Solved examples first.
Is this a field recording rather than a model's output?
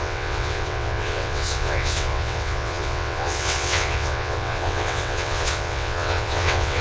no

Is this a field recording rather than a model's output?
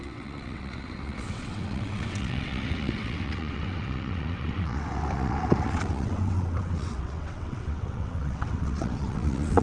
no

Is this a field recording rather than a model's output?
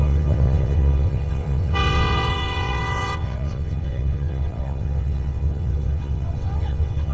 no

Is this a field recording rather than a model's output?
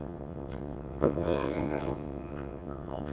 no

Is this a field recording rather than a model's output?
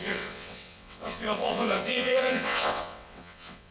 no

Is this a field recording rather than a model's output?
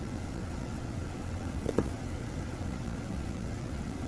no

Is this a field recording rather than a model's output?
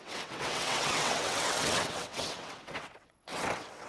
no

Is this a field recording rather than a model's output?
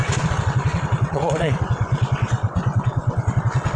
no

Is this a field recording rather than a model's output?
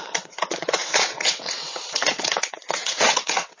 no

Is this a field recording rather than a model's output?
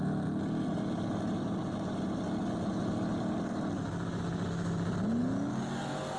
yes